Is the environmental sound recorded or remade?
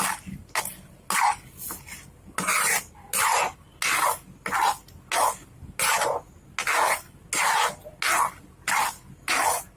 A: recorded